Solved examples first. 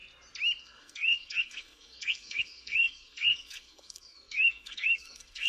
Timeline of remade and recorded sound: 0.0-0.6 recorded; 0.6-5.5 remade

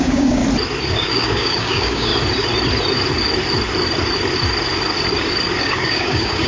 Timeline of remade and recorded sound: 0.0-0.4 remade; 0.4-0.9 recorded; 0.9-2.1 remade; 2.1-5.6 recorded; 5.6-6.5 remade

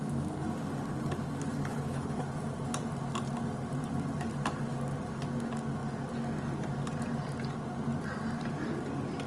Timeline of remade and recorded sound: 0.0-1.7 recorded; 1.7-2.2 remade; 2.2-9.3 recorded